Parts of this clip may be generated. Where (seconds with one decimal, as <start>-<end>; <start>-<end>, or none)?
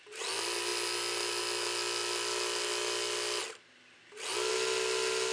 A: none